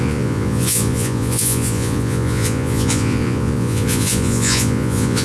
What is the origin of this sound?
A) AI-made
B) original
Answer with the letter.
A